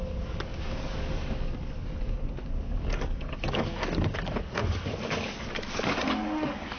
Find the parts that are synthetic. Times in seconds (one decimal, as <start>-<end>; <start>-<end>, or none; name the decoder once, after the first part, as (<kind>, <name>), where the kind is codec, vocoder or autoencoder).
0.0-6.8 (codec, DAC)